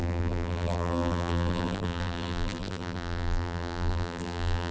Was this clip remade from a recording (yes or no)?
yes